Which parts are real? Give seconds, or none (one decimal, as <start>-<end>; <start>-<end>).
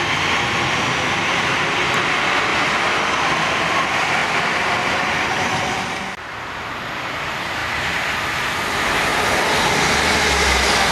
0.0-2.5; 3.4-4.2; 5.5-10.9